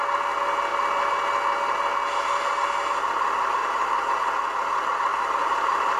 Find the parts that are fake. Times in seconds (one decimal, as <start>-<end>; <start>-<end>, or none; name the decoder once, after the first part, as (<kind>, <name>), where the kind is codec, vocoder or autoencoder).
3.6-4.1 (vocoder, BigVGAN v2); 5.1-6.0